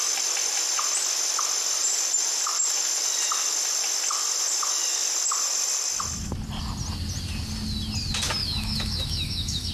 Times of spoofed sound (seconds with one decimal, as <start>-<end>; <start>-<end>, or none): 8.4-9.7